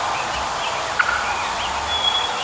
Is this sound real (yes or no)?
yes